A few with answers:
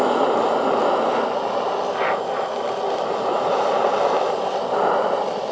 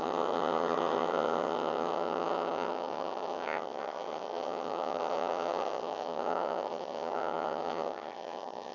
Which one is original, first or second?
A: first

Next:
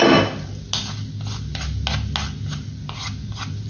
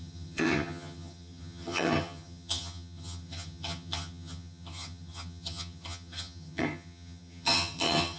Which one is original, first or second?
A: first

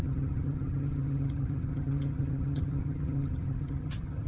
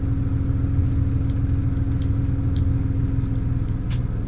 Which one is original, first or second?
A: second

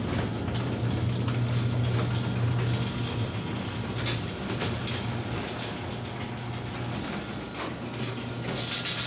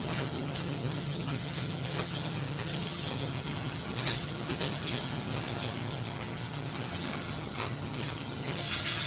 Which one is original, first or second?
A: first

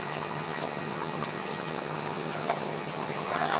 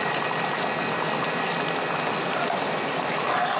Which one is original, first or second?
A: second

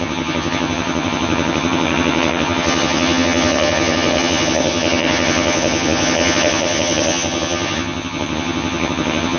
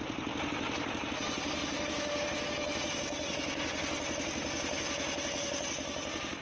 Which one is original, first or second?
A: second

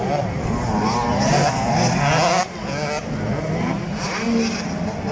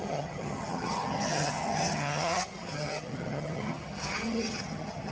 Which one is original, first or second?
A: first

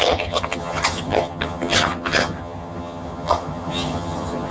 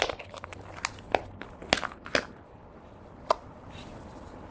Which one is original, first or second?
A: second